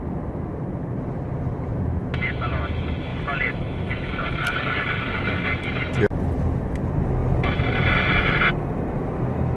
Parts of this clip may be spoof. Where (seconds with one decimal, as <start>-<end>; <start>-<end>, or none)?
none